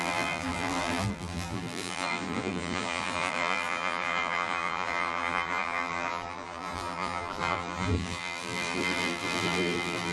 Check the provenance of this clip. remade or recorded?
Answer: remade